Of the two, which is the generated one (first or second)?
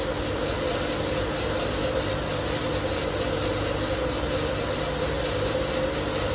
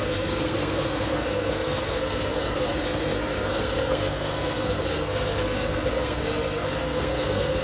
second